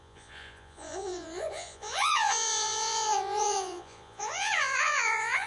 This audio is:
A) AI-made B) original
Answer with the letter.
A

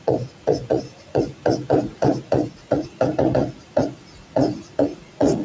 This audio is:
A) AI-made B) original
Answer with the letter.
A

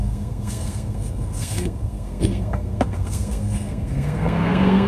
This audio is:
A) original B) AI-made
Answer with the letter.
B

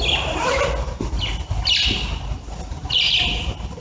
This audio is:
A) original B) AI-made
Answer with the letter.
A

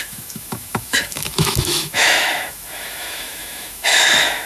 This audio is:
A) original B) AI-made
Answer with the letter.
B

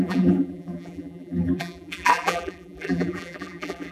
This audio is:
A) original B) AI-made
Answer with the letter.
B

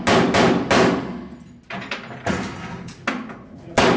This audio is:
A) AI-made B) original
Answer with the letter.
B